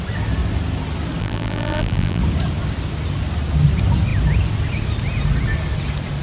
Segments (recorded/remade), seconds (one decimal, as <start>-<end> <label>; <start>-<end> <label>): 0.0-1.2 recorded; 1.2-2.2 remade; 2.2-6.2 recorded

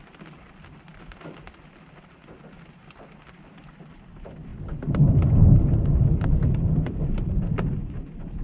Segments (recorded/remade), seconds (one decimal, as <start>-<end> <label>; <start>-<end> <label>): 0.0-4.5 recorded; 4.5-8.0 remade; 8.0-8.4 recorded

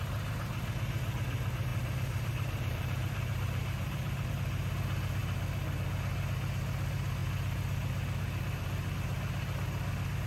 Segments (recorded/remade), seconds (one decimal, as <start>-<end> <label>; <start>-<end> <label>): 0.0-1.7 recorded; 1.7-4.3 remade; 4.3-10.3 recorded

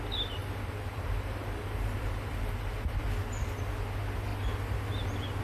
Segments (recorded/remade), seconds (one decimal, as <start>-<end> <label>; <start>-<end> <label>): 0.0-0.4 recorded; 0.4-3.0 remade; 3.0-5.4 recorded

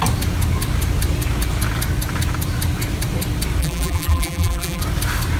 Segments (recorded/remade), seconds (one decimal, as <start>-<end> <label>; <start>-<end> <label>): 0.0-3.6 recorded; 3.6-4.8 remade; 4.8-5.4 recorded